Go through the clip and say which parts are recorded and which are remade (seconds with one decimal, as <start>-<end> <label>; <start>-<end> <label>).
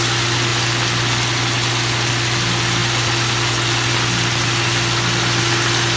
0.0-6.0 recorded